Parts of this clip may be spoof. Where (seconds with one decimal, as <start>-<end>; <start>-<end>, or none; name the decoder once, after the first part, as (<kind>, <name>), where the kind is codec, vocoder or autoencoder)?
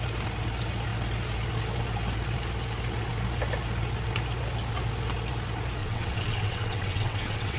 5.8-7.6 (vocoder, WaveNeXt)